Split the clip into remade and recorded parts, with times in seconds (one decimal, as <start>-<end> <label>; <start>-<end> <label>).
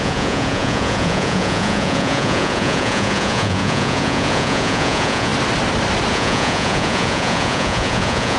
0.0-5.3 remade; 5.3-6.1 recorded; 6.1-8.4 remade